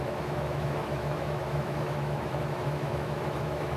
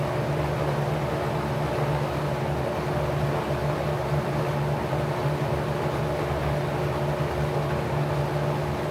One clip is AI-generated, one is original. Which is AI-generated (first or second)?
first